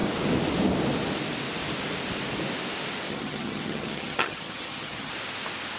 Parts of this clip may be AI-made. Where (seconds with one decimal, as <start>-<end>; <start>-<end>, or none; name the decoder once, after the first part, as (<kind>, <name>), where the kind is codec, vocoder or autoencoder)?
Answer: 3.1-5.1 (vocoder, HiFi-GAN)